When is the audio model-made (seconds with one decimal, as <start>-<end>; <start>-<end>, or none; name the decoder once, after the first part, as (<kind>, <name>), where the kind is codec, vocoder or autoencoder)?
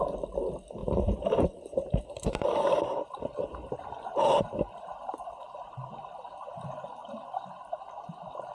0.8-5.9 (vocoder, BigVGAN v2); 7.0-7.5